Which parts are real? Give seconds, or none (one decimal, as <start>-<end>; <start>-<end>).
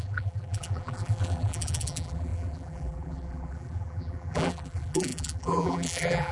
none